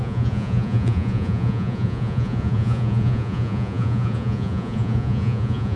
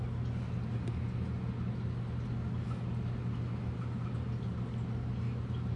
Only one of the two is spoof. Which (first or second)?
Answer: first